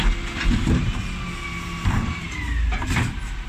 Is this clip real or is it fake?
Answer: real